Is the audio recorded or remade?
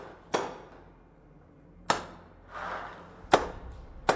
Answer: recorded